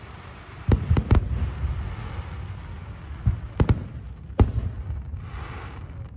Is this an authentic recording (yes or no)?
yes